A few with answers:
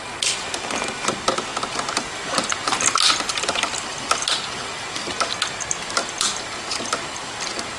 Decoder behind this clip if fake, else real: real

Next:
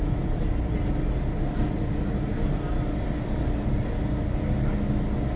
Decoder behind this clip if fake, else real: real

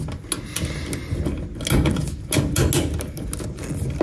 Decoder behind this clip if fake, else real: real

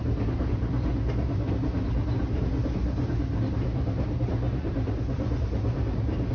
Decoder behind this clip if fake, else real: real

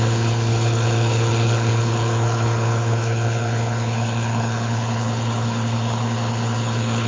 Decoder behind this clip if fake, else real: fake, codec, HILCodec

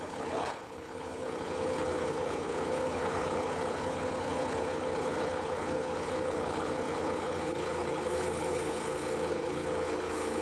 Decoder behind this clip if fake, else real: fake, codec, HILCodec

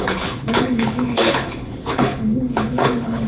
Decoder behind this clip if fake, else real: fake, codec, HILCodec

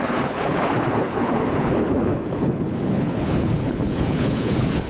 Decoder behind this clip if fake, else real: fake, codec, HILCodec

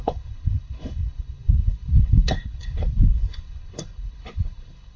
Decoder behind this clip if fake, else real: fake, codec, HILCodec